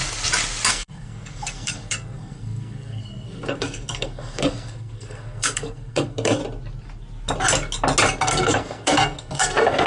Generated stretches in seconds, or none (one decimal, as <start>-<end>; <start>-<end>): 0.7-6.4; 8.2-9.9